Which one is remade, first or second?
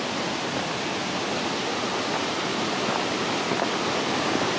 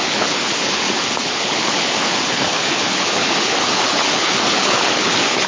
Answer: second